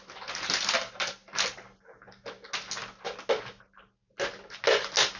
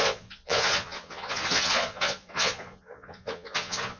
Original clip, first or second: first